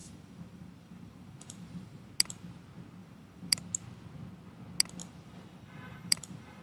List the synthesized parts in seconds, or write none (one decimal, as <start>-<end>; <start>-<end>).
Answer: 0.0-2.1; 3.0-3.6; 5.0-6.6